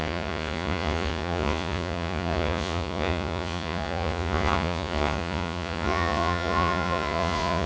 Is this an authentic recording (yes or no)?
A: no